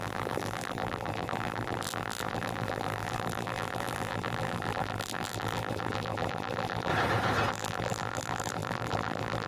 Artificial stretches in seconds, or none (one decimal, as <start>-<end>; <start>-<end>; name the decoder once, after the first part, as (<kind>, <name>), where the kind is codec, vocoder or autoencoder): 0.0-6.9 (vocoder, BigVGAN v2); 7.5-9.5